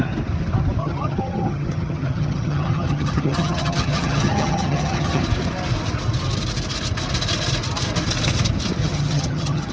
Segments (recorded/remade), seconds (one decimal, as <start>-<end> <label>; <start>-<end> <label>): 0.0-0.8 recorded; 0.8-5.2 remade; 5.2-8.8 recorded; 8.8-9.7 remade